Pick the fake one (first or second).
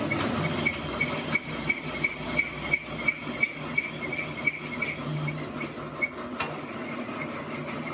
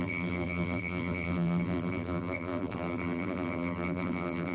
second